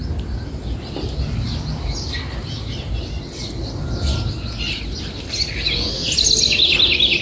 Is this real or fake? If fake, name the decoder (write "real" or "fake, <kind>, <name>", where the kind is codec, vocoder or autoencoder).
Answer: real